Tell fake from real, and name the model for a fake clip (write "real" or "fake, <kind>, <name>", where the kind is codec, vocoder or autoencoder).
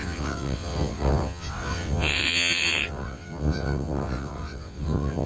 fake, vocoder, WaveNeXt